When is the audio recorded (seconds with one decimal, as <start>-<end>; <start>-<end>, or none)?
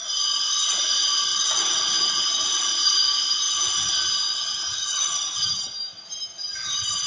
0.0-1.3; 2.7-4.7; 5.2-7.1